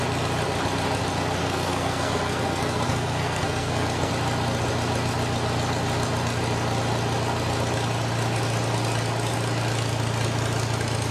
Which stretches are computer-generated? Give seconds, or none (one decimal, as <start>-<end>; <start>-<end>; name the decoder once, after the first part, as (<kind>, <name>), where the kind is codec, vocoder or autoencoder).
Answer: 1.4-4.1 (codec, SNAC)